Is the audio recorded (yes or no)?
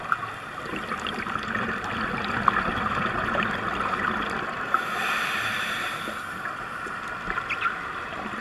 yes